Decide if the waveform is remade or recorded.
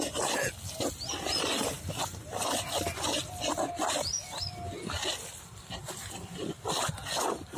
recorded